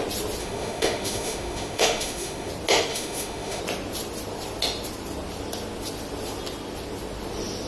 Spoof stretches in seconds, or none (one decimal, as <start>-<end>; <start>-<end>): 0.4-2.5; 2.9-3.6